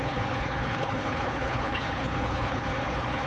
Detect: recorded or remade remade